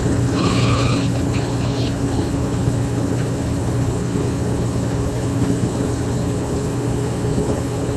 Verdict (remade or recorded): remade